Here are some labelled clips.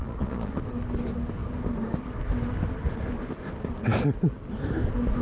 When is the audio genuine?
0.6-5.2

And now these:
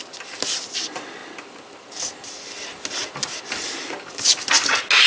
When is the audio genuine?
0.0-5.1

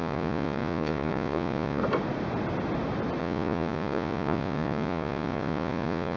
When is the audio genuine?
1.8-3.2

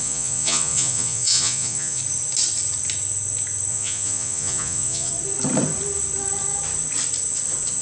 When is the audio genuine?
2.0-3.7; 5.1-7.8

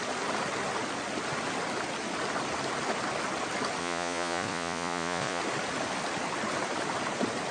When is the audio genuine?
0.0-3.8; 5.4-7.5